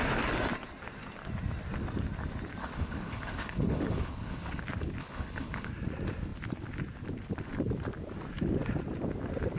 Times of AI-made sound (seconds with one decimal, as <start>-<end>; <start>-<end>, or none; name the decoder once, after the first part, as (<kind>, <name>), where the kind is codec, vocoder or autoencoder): 2.6-4.6 (codec, HILCodec); 5.0-5.7